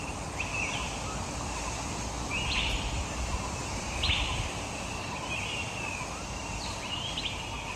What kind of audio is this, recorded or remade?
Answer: recorded